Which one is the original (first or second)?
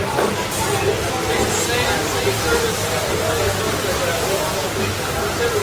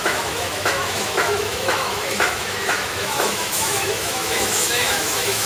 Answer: first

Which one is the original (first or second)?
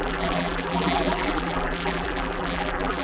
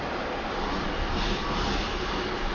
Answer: second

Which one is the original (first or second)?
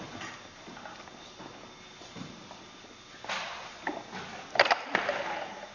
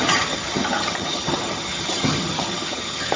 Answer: first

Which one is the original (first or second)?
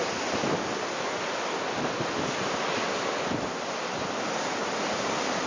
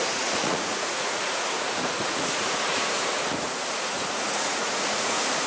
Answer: first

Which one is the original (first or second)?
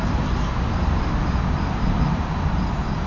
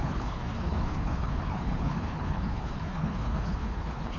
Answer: first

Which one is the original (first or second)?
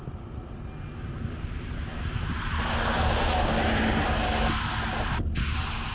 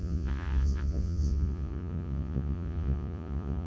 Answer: first